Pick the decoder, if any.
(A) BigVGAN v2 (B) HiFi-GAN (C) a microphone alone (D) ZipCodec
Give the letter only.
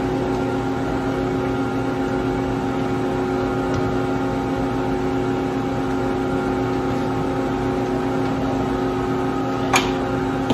C